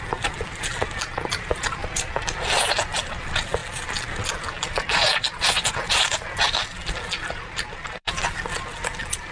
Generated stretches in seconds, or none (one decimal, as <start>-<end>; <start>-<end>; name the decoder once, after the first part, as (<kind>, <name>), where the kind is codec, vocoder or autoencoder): none

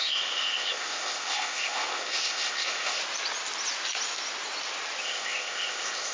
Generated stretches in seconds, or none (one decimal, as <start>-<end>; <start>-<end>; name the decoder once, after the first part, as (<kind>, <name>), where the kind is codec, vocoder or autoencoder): 0.0-3.0 (codec, ZipCodec); 5.0-6.1

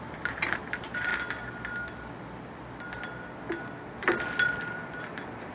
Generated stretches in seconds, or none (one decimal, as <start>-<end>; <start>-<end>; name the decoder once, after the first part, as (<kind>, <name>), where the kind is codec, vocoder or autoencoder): none

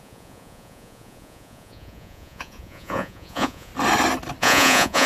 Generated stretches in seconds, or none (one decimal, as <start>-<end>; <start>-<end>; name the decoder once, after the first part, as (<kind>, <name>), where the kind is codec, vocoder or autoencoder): 0.0-3.7 (vocoder, Vocos); 4.4-5.1

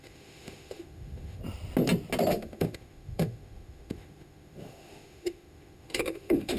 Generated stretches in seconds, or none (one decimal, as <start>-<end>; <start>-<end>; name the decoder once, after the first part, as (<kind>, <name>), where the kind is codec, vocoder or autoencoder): 0.0-1.4 (autoencoder, DAC-VAE); 2.3-6.6

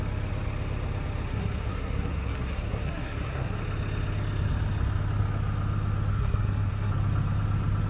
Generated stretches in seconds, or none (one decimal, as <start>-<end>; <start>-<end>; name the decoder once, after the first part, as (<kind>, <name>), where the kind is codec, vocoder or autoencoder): 1.3-3.6 (codec, SNAC); 6.1-6.9

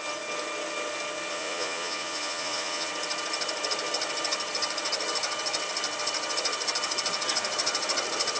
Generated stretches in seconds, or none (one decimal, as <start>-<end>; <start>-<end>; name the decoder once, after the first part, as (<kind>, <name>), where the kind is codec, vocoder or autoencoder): 1.3-2.9 (vocoder, Vocos)

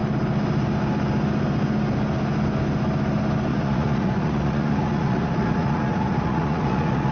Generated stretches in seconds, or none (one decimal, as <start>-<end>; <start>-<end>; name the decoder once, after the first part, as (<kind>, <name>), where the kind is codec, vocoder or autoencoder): 3.5-7.1 (vocoder, Vocos)